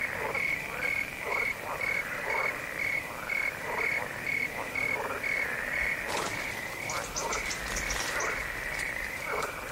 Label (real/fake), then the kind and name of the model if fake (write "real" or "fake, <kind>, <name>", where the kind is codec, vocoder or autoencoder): real